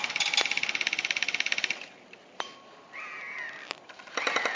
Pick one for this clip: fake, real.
real